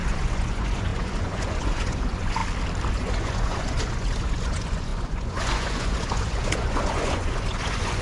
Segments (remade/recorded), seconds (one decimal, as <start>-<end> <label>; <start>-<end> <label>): 0.0-2.4 remade; 2.4-2.9 recorded; 2.9-8.0 remade